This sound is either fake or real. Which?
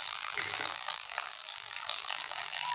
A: fake